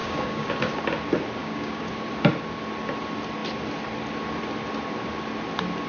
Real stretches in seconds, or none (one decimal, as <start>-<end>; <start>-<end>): 0.5-1.4; 1.9-5.9